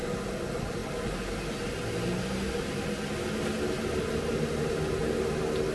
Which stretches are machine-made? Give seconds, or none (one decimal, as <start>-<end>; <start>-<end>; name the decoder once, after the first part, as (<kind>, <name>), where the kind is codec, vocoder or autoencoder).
none